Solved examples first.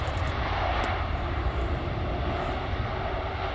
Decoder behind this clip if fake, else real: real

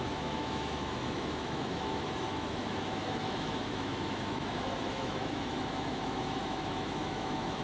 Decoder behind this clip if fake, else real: fake, autoencoder, DAC-VAE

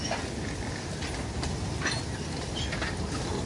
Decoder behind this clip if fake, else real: real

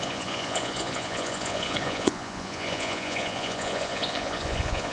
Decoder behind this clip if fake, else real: fake, vocoder, Vocos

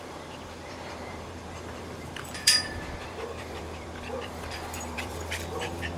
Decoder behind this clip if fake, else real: fake, vocoder, BigVGAN v2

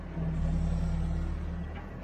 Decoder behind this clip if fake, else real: real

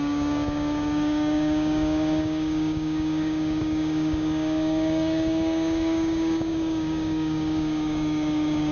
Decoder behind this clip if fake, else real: fake, codec, DAC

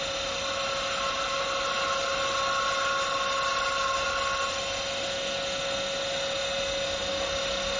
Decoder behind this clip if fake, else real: real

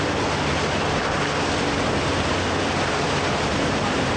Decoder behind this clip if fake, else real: real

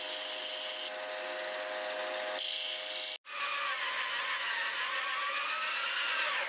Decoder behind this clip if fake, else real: real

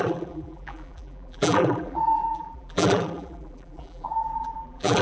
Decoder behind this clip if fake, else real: fake, vocoder, BigVGAN v2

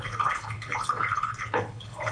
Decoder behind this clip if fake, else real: fake, codec, HILCodec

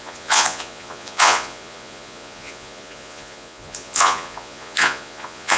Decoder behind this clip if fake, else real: fake, vocoder, Vocos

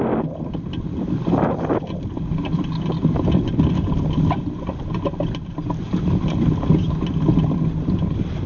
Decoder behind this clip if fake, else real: real